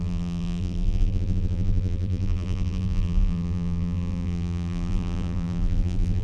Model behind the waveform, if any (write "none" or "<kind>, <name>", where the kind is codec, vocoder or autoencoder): vocoder, BigVGAN v2